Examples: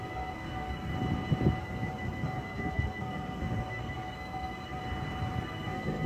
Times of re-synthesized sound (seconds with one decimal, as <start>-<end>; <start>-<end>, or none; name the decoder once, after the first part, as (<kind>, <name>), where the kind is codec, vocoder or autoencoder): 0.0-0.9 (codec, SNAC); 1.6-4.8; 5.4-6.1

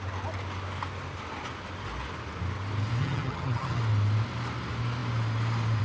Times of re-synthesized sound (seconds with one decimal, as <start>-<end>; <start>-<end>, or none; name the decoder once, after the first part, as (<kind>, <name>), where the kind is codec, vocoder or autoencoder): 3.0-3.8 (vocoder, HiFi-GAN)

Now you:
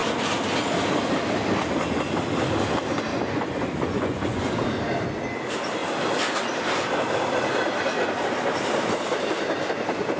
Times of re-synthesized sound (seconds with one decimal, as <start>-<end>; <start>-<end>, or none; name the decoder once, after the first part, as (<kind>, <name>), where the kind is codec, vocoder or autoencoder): 3.1-4.5 (vocoder, Vocos)

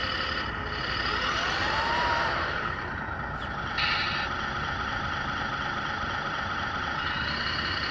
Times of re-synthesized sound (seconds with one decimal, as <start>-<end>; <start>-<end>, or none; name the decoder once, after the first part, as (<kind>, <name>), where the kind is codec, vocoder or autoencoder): none

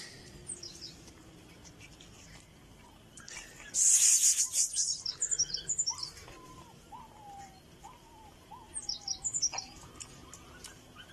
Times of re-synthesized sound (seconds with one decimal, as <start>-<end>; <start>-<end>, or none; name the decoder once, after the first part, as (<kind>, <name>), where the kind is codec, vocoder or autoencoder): 0.0-10.2 (vocoder, BigVGAN v2)